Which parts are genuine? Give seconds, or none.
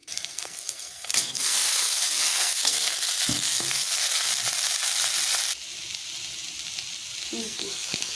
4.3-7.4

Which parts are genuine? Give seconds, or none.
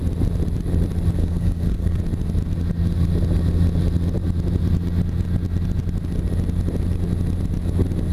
0.0-1.2; 2.0-8.1